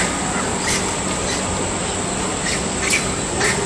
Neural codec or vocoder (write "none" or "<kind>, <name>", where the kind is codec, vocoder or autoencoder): none